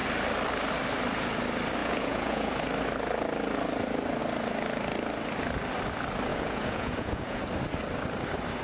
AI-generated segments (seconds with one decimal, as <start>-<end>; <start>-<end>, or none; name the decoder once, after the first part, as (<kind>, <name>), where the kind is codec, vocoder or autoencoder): 1.8-2.5 (vocoder, Vocos); 6.3-7.4